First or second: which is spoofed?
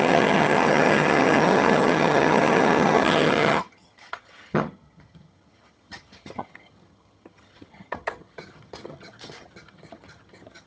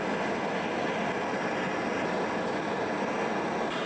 first